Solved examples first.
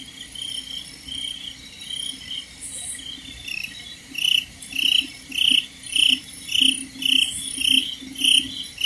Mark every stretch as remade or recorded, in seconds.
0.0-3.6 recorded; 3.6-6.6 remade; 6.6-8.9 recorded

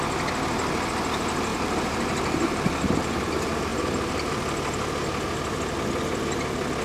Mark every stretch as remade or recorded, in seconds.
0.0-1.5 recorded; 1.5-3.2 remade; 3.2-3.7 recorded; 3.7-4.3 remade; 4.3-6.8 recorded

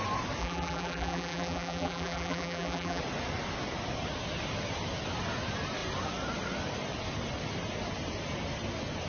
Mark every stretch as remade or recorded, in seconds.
0.0-0.4 recorded; 0.4-3.0 remade; 3.0-9.1 recorded

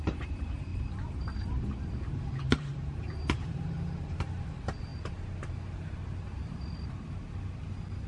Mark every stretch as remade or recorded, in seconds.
0.0-0.7 remade; 0.7-2.2 recorded; 2.2-4.9 remade; 4.9-8.1 recorded

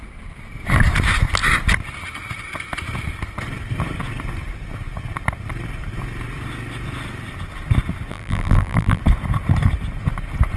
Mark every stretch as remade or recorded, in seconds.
0.0-8.1 recorded; 8.1-9.0 remade; 9.0-10.6 recorded

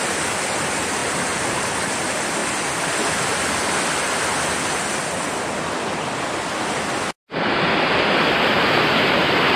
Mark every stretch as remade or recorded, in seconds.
0.0-1.0 recorded; 1.0-1.5 remade; 1.5-9.6 recorded

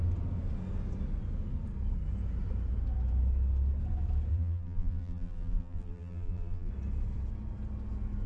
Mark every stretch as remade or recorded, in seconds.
0.0-4.3 recorded; 4.3-6.7 remade; 6.7-8.3 recorded

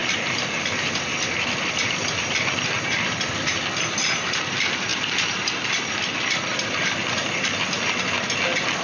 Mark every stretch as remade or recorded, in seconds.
0.0-4.9 remade; 4.9-5.7 recorded; 5.7-8.8 remade